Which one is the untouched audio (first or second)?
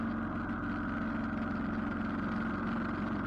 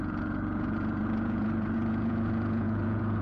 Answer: first